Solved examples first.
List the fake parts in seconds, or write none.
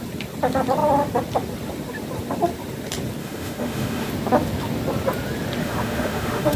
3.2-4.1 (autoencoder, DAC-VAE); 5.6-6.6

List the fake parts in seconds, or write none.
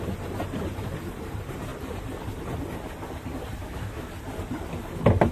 3.6-4.1 (autoencoder, DAC-VAE)